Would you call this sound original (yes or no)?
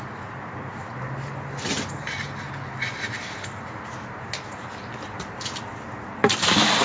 yes